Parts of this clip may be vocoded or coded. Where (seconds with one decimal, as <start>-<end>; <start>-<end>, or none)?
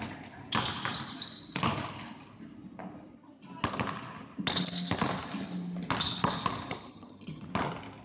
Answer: 6.9-7.5